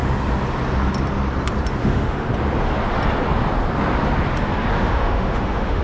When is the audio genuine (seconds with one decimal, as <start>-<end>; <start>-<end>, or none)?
0.0-1.8; 2.3-4.8